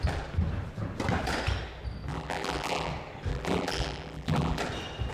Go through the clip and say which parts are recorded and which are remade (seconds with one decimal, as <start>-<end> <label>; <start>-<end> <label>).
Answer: 0.0-2.1 recorded; 2.1-2.9 remade; 2.9-3.3 recorded; 3.3-4.6 remade; 4.6-5.1 recorded